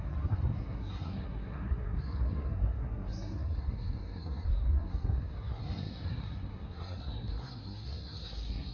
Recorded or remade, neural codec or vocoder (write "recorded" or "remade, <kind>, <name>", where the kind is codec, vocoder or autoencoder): remade, codec, SNAC